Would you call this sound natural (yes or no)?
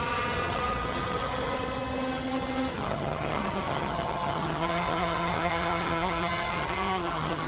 no